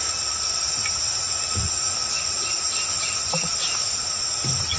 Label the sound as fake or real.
real